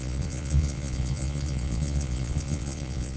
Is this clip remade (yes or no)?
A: yes